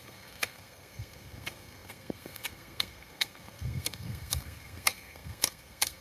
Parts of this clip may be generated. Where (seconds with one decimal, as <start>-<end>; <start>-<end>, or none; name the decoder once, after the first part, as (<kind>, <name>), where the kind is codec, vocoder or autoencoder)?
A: 0.0-6.0 (codec, SNAC)